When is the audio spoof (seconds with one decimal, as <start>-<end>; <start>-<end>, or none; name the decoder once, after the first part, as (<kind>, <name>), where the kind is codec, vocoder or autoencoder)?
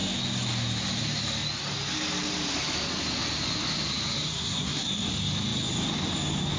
4.3-5.1 (codec, SNAC)